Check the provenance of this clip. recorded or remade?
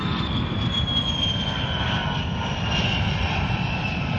remade